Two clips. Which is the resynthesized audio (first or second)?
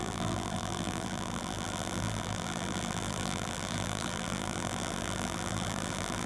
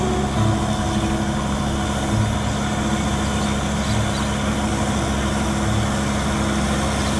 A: first